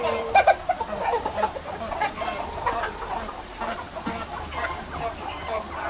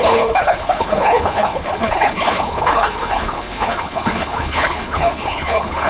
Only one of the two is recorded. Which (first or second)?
first